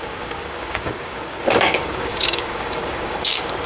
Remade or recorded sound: remade